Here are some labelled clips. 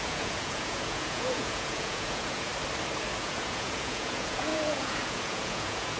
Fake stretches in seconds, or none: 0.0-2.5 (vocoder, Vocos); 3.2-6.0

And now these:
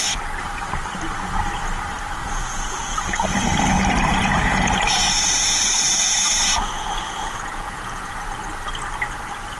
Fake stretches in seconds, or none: 2.2-3.6 (vocoder, Vocos); 4.1-8.1

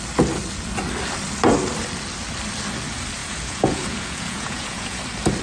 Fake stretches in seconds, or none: 3.2-5.0 (vocoder, Vocos)

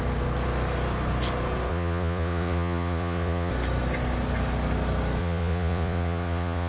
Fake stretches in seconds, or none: 1.7-3.5 (vocoder, Vocos); 5.2-6.7

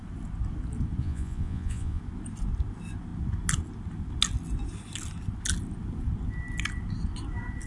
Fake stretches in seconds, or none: 1.0-2.0 (vocoder, Vocos)

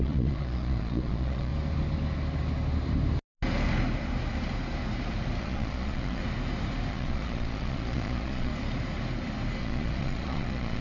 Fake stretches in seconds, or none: 0.0-1.5 (vocoder, Vocos); 5.4-6.2; 6.9-8.5; 9.6-10.8